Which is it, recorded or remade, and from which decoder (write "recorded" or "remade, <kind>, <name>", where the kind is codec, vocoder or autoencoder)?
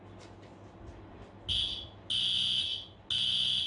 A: recorded